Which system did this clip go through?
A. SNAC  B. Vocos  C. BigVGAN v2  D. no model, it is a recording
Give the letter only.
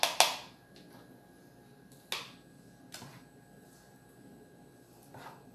D